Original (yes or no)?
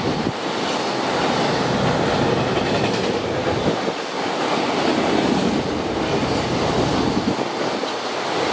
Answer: yes